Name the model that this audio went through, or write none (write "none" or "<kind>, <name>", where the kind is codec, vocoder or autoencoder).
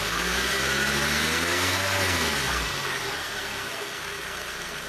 codec, SNAC